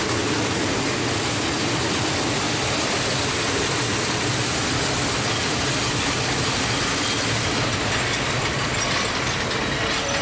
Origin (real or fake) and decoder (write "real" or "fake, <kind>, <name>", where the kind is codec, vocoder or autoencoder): real